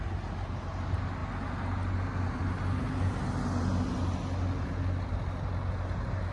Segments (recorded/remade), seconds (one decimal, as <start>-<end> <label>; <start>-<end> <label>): 0.0-6.3 recorded